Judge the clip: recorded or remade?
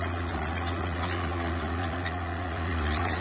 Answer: remade